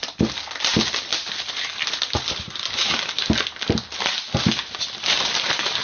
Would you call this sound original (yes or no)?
yes